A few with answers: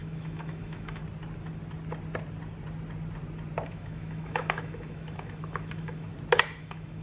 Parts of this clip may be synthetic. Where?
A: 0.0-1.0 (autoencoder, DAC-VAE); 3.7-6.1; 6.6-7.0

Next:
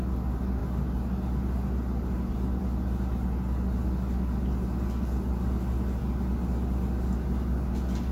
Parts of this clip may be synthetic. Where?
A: none

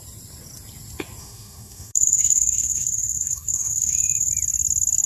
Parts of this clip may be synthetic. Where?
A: 1.2-4.3 (autoencoder, DAC-VAE)

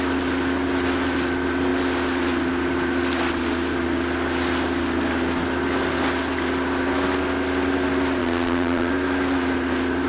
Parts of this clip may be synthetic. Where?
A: 8.2-8.9 (vocoder, Vocos)

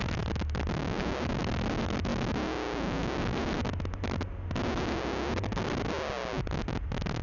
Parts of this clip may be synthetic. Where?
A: none

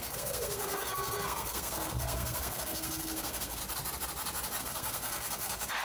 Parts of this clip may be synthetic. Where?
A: 0.0-3.6 (codec, SNAC); 4.6-5.8